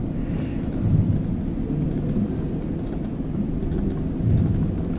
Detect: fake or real real